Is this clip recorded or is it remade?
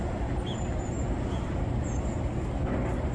recorded